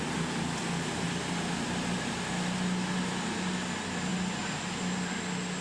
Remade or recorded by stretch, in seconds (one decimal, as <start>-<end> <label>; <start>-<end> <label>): 0.0-5.6 recorded